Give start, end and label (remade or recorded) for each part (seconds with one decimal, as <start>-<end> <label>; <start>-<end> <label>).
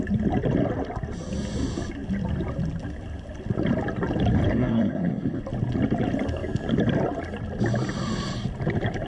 0.0-4.5 recorded; 4.5-5.4 remade; 5.4-9.1 recorded